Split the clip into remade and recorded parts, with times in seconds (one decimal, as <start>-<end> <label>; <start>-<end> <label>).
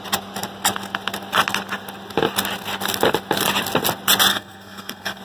0.0-4.3 recorded; 4.3-5.2 remade